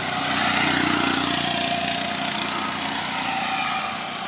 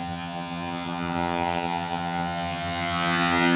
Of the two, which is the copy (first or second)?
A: second